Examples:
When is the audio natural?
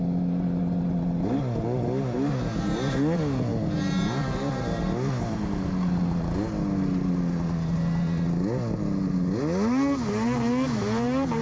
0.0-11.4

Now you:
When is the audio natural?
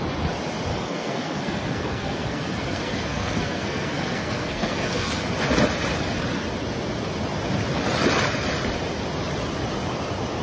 0.0-0.7; 5.3-10.4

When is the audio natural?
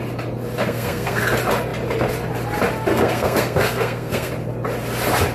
0.0-0.6; 1.2-2.9; 4.3-5.3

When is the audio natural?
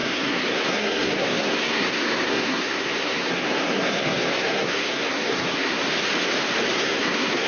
5.8-6.7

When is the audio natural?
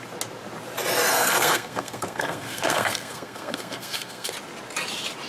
0.0-1.1; 4.3-5.3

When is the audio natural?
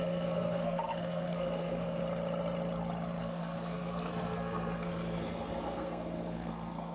2.0-3.2